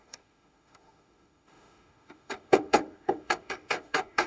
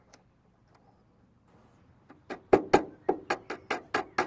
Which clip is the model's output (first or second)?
first